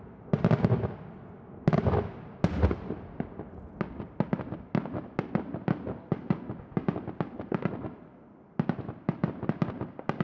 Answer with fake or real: real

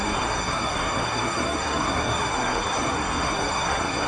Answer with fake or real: fake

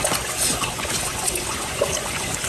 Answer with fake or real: fake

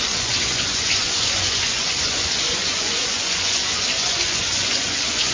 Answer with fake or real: fake